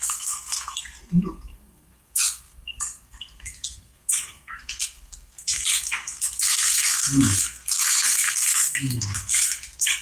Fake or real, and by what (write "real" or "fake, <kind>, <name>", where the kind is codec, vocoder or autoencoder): fake, codec, SNAC